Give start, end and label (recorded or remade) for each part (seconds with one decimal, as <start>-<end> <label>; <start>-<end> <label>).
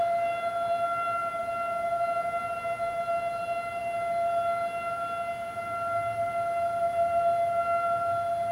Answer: 0.0-8.5 recorded